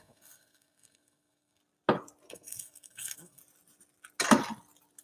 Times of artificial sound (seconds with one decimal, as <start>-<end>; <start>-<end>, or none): 0.0-1.6; 2.3-3.4